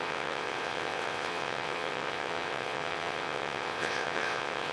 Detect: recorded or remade remade